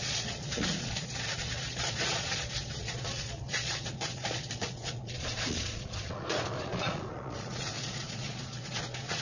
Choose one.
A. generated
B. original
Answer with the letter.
A